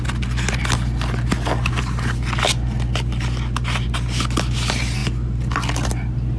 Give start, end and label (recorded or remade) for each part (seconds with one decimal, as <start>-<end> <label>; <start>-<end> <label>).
0.0-6.4 recorded